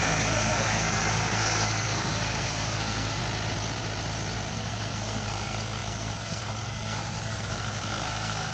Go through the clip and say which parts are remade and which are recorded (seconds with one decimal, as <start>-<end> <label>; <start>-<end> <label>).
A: 0.0-3.2 remade; 3.2-4.5 recorded; 4.5-8.5 remade